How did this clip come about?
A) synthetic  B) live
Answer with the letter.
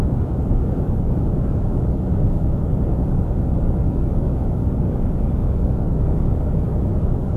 A